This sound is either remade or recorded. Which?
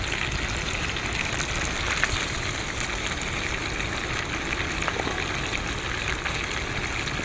recorded